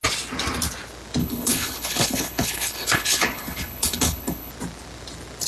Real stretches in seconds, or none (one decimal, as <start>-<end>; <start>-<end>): 0.0-1.2; 4.5-5.5